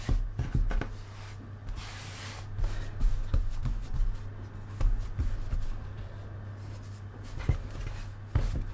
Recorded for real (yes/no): yes